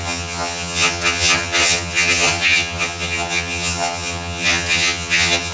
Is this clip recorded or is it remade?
remade